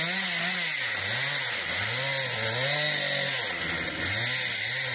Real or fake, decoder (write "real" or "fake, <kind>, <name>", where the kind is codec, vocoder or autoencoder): real